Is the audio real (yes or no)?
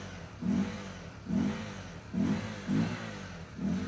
yes